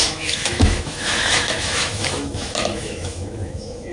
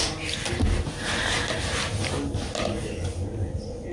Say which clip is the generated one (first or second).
first